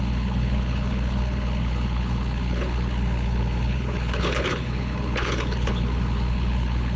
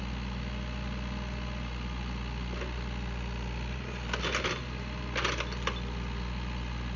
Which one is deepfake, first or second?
first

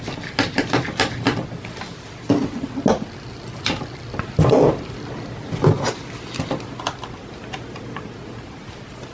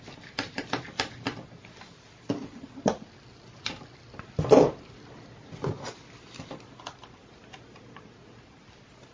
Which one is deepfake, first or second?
second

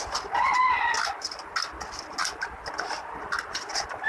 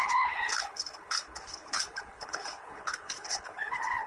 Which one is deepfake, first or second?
second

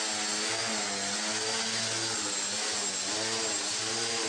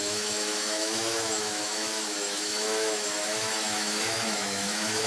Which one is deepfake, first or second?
second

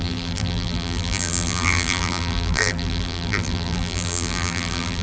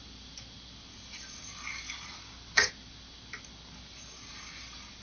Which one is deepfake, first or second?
first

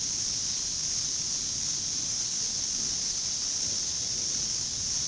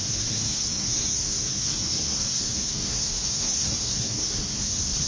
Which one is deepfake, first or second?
second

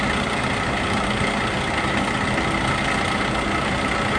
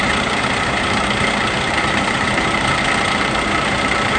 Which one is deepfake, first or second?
second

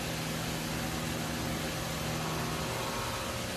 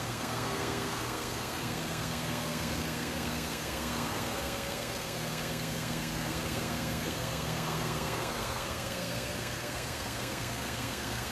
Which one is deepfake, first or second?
second